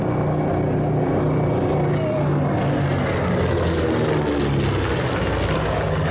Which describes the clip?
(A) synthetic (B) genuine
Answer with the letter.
B